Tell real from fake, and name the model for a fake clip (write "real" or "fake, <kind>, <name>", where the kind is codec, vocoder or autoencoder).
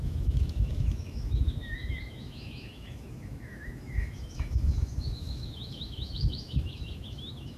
fake, autoencoder, DAC-VAE